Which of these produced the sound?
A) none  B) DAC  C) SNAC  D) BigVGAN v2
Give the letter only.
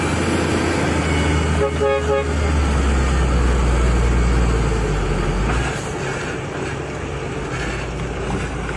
A